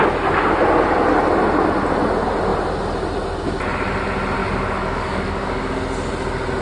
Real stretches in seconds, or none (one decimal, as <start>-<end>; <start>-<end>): 0.0-4.4; 5.7-6.6